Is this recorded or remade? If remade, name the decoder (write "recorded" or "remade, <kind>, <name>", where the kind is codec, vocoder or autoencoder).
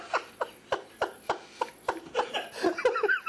recorded